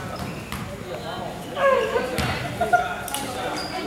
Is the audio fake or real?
real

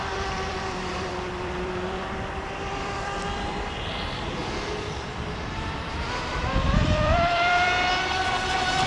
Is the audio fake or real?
fake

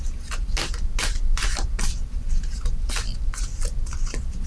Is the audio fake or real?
real